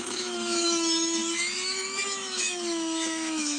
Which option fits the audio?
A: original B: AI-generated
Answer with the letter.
B